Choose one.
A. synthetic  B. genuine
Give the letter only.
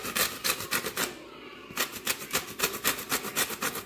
B